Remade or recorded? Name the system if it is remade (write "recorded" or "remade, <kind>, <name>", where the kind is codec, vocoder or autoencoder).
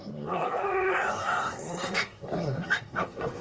remade, codec, SNAC